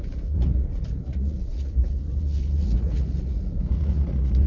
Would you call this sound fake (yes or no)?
yes